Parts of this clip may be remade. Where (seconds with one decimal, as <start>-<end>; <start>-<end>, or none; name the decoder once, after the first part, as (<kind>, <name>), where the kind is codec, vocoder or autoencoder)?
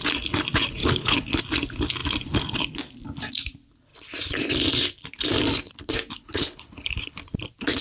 0.8-1.4 (codec, HILCodec); 6.2-7.2